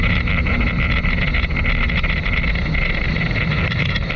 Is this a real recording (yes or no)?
yes